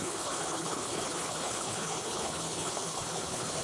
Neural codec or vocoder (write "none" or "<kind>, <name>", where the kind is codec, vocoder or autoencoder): codec, HILCodec